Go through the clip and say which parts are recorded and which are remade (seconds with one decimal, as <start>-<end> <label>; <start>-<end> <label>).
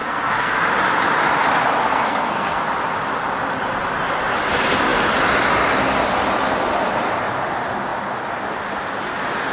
0.0-0.6 remade; 0.6-1.8 recorded; 1.8-2.6 remade; 2.6-9.5 recorded